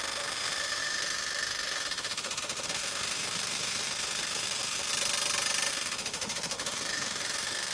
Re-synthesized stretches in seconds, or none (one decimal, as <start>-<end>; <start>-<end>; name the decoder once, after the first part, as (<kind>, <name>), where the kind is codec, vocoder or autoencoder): 0.0-4.9 (autoencoder, DAC-VAE); 5.7-7.7